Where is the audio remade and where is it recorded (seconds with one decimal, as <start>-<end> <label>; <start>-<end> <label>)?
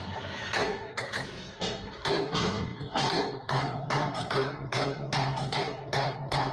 0.0-6.5 remade